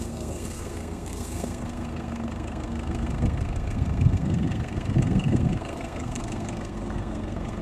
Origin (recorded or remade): remade